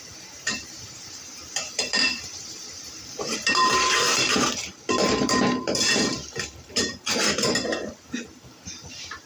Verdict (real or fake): fake